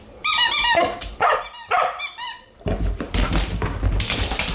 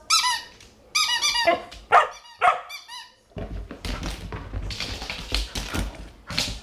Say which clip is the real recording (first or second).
second